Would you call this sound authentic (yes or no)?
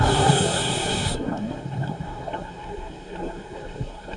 no